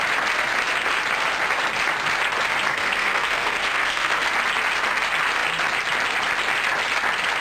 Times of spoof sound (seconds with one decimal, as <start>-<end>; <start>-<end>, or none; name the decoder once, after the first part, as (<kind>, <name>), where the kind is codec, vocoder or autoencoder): 2.7-4.3 (codec, SNAC)